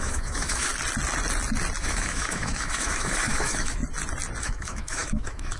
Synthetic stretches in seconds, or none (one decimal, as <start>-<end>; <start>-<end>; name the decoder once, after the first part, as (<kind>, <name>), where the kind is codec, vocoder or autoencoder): 0.0-0.7 (autoencoder, DAC-VAE); 1.8-3.8; 4.4-5.6